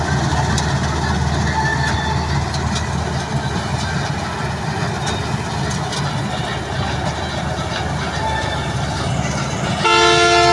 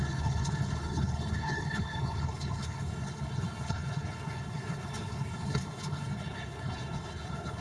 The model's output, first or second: second